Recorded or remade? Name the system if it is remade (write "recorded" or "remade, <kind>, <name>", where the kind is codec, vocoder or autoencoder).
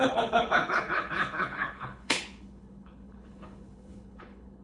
remade, codec, HILCodec